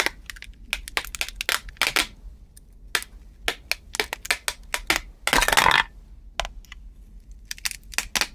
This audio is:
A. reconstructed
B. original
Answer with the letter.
B